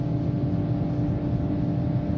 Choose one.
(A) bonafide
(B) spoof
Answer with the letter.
A